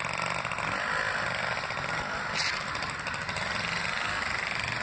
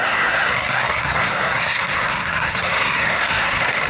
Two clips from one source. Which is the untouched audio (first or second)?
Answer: first